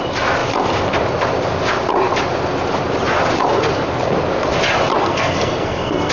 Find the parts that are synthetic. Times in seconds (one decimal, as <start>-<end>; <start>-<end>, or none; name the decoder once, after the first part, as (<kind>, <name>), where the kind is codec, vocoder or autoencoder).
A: 5.0-6.1 (codec, SNAC)